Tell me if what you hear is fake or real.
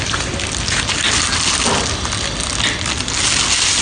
real